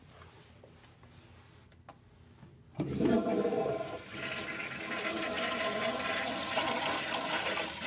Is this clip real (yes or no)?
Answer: yes